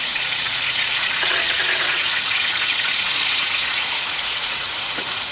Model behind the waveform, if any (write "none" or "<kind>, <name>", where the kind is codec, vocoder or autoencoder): vocoder, Vocos